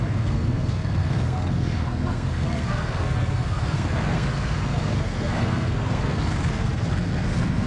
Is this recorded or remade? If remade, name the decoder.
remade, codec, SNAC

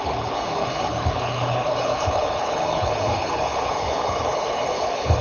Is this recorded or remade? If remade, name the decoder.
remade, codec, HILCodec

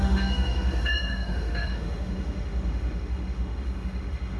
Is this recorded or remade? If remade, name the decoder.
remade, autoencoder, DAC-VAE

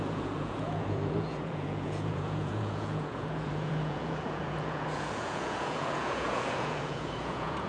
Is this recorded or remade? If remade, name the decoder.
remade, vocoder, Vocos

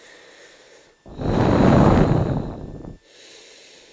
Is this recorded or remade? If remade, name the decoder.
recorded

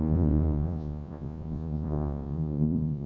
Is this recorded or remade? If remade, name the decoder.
remade, vocoder, Vocos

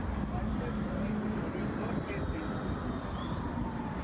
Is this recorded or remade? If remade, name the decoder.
remade, vocoder, BigVGAN v2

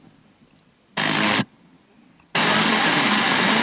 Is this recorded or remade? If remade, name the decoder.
recorded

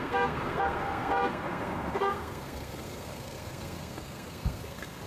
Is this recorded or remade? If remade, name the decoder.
remade, codec, SNAC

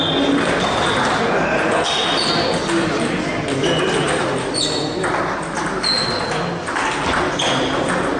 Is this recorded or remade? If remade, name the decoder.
recorded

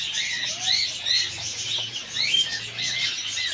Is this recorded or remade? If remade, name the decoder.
recorded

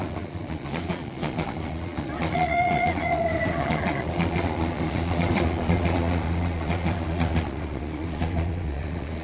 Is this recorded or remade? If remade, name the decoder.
remade, vocoder, Vocos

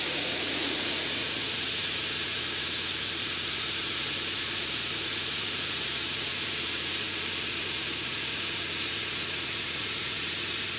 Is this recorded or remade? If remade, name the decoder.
remade, vocoder, Vocos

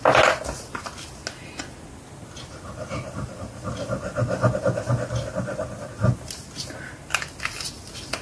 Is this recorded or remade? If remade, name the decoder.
recorded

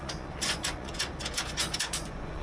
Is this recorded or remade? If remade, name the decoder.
remade, vocoder, Vocos